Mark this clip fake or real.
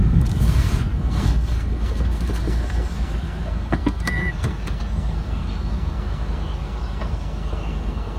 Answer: fake